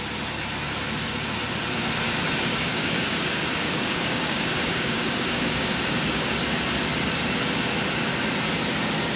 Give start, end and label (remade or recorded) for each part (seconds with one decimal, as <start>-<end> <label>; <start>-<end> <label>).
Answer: 0.0-2.5 recorded; 2.5-6.2 remade; 6.2-9.2 recorded